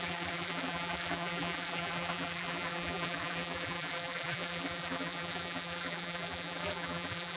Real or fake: fake